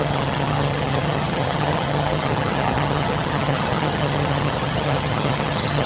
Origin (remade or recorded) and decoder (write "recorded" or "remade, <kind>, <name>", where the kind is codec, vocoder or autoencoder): remade, vocoder, HiFi-GAN